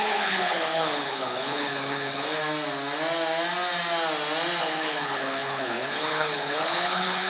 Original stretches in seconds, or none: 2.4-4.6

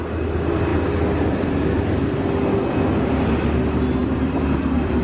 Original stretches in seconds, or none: 0.0-4.0

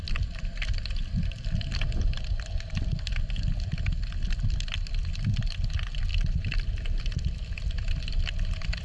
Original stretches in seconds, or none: 0.0-8.8

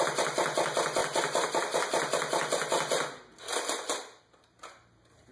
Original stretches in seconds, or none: 0.0-5.3

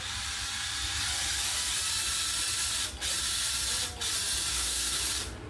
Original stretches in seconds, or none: 0.0-4.5; 5.0-5.5

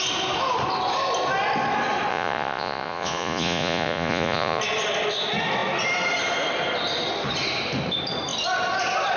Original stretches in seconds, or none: 0.0-2.1; 4.6-9.2

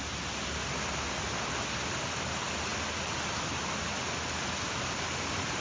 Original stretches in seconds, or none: 0.0-5.6